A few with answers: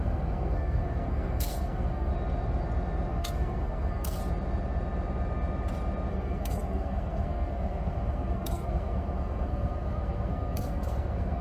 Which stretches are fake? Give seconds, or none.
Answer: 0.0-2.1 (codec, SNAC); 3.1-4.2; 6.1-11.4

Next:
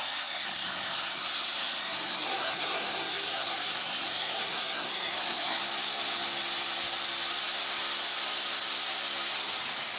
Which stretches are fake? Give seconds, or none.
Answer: 0.0-5.6 (codec, SNAC)

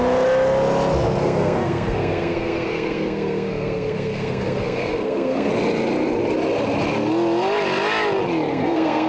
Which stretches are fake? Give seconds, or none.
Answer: 1.2-5.5 (codec, SNAC); 8.5-9.1

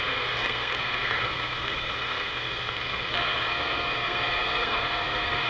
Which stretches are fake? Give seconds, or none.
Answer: 0.0-5.5 (codec, SNAC)

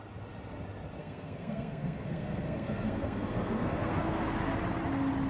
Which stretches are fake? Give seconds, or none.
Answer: 1.0-4.2 (codec, SNAC)

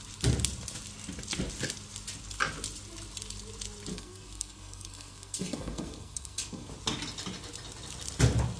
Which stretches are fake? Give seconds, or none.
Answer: 3.9-6.7 (codec, SNAC)

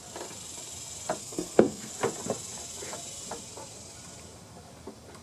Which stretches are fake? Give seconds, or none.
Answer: 1.2-1.9 (codec, SNAC)

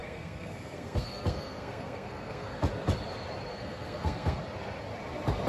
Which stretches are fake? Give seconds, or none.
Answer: 0.0-2.6 (codec, SNAC); 3.5-4.4